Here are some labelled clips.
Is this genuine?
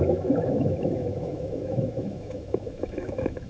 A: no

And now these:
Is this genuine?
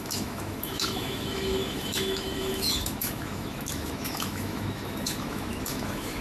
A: no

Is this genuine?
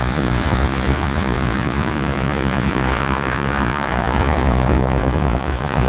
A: no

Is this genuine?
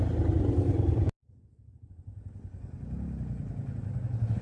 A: yes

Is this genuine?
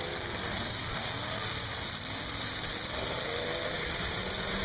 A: yes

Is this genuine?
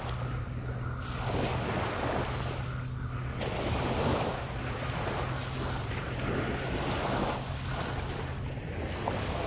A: yes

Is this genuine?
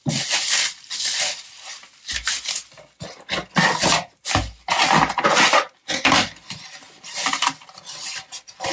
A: yes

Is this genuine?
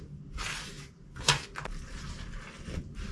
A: yes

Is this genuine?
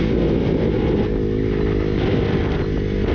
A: yes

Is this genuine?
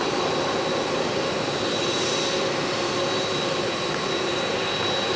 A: yes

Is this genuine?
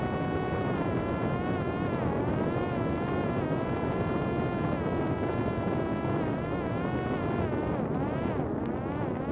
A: yes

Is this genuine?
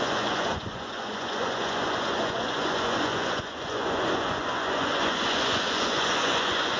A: no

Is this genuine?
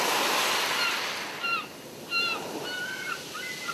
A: yes